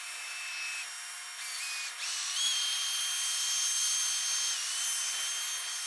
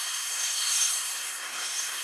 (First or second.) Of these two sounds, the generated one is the second